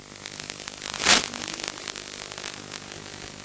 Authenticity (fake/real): real